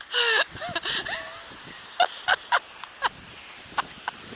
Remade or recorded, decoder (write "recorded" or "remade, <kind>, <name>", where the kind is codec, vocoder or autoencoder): recorded